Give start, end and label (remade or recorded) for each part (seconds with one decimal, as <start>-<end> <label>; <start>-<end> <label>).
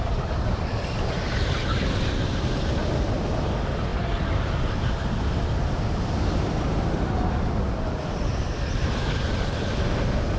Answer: 0.0-10.4 recorded